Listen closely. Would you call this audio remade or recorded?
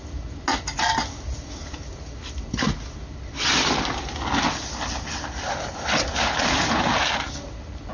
recorded